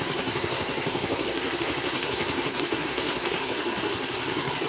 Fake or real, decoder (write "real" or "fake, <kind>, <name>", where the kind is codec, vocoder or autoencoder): fake, codec, SNAC